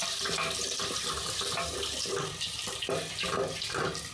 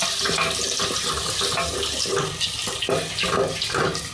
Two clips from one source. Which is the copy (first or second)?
first